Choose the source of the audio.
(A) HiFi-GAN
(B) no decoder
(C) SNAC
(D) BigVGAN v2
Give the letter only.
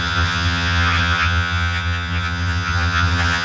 A